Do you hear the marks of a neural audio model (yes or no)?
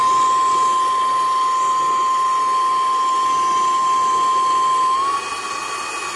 no